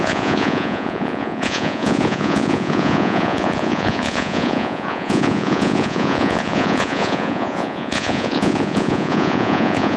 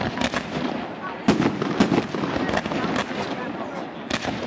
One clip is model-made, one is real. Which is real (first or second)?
second